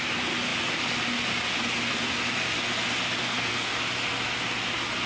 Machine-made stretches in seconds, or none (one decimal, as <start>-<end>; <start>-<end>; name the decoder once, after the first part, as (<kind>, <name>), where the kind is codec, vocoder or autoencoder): 3.2-3.7 (codec, SNAC)

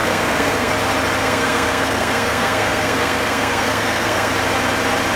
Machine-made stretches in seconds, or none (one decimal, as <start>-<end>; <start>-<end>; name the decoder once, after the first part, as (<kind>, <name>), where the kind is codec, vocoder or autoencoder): 0.0-0.7 (codec, SNAC); 1.2-4.3

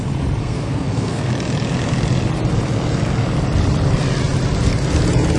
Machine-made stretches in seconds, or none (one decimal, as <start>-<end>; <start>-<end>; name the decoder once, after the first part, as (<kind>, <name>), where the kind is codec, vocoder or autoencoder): 0.4-1.3 (codec, SNAC)